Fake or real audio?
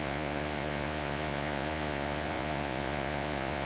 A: fake